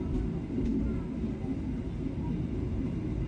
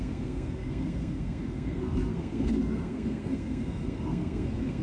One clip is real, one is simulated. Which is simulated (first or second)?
second